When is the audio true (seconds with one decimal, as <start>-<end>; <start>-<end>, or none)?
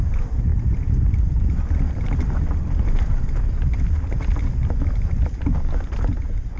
0.0-6.6